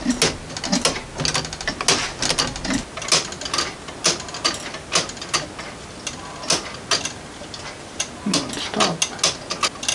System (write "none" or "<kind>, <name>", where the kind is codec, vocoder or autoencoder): none